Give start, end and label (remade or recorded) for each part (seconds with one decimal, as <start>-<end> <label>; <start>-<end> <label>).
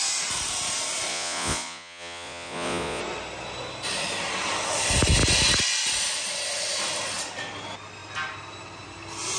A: 0.0-1.1 recorded; 1.1-3.0 remade; 3.0-9.4 recorded